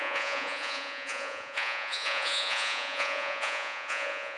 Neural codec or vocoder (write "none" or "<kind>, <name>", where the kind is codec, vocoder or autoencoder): vocoder, Vocos